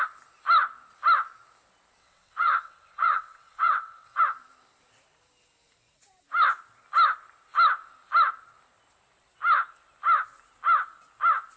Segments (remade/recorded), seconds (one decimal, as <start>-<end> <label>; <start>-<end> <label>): 0.0-2.0 recorded; 2.0-4.2 remade; 4.2-11.6 recorded